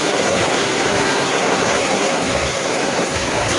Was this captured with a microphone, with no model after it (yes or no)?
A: no